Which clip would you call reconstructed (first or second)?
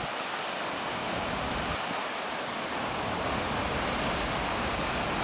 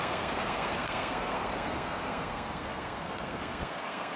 second